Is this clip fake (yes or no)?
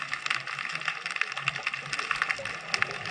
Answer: no